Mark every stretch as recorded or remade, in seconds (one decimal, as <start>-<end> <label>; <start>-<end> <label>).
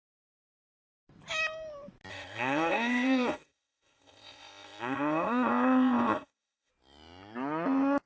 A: 0.0-2.1 recorded; 2.1-6.7 remade; 6.7-8.1 recorded